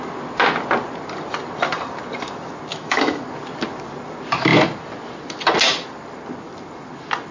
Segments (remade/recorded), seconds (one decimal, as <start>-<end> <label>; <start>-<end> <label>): 0.0-2.7 recorded; 2.7-3.2 remade; 3.2-7.3 recorded